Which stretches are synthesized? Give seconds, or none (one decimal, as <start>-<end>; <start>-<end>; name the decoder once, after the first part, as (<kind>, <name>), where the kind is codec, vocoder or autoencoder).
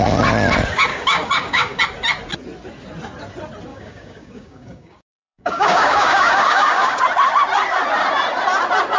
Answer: 0.9-1.8 (codec, DAC); 3.7-7.0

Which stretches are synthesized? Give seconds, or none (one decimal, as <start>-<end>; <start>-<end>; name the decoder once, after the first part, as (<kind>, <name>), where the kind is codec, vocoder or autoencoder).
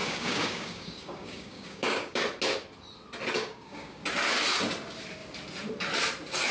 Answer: 0.0-2.2 (codec, DAC); 3.4-4.0